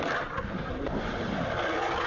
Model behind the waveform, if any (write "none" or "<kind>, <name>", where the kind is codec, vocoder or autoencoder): none